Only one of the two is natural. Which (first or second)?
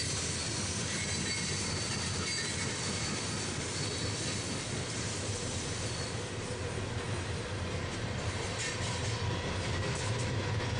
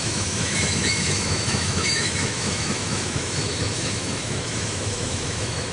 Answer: first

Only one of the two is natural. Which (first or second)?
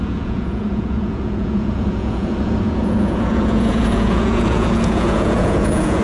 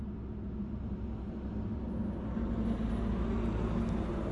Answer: second